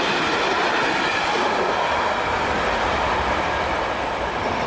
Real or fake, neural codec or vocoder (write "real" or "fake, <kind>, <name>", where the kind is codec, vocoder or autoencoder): real